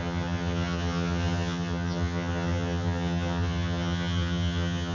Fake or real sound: fake